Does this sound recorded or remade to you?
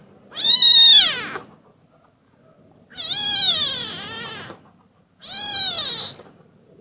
recorded